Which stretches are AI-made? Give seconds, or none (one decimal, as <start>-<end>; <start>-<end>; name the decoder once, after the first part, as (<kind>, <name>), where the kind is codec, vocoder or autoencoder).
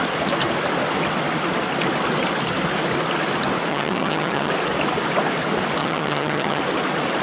3.7-4.5 (vocoder, HiFi-GAN); 5.8-6.6